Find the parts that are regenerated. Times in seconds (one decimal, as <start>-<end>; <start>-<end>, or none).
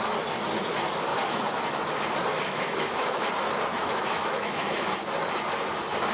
1.1-1.6; 2.3-3.3; 3.7-4.8